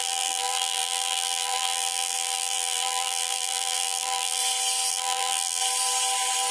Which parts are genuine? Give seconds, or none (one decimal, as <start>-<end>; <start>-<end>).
4.4-4.9; 5.6-6.5